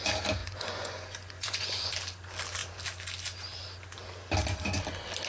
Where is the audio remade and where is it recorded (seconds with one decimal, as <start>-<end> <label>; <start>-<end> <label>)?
0.0-0.4 recorded; 0.4-1.9 remade; 1.9-5.3 recorded

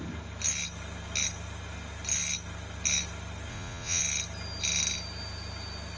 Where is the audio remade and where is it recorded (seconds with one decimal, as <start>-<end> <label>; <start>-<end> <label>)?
0.0-3.5 recorded; 3.5-4.0 remade; 4.0-6.0 recorded

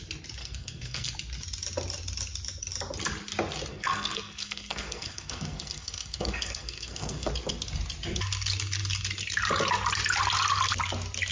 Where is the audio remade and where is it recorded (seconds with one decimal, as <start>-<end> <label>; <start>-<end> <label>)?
0.0-0.4 recorded; 0.4-1.1 remade; 1.1-3.7 recorded; 3.7-7.3 remade; 7.3-11.3 recorded

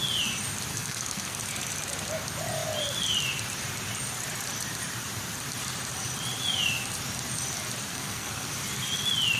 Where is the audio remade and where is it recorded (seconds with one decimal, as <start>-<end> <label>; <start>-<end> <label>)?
0.0-0.7 recorded; 0.7-1.4 remade; 1.4-7.9 recorded; 7.9-8.5 remade; 8.5-9.4 recorded

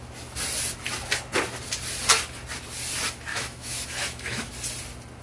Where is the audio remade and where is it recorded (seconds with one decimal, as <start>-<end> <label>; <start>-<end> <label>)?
0.0-3.3 recorded; 3.3-4.5 remade; 4.5-5.2 recorded

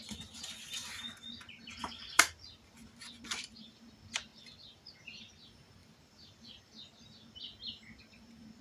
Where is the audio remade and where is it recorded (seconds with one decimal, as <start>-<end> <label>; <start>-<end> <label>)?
0.0-1.8 recorded; 1.8-2.8 remade; 2.8-4.3 recorded; 4.3-4.9 remade; 4.9-5.8 recorded; 5.8-6.7 remade; 6.7-8.6 recorded